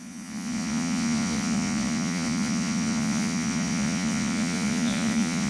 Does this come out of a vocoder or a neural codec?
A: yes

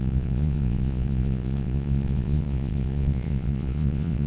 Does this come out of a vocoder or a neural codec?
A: yes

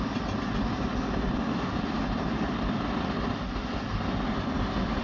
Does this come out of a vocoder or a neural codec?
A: no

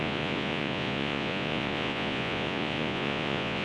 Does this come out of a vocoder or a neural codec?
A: yes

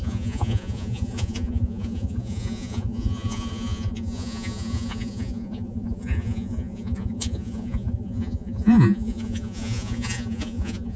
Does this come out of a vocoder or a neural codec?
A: yes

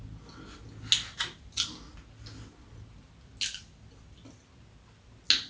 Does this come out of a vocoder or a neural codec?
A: no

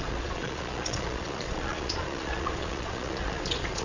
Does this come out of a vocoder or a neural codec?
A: yes